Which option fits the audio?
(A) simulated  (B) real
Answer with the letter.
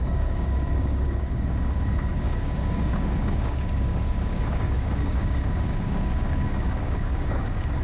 A